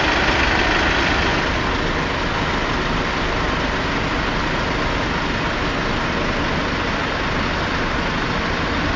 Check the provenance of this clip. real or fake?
real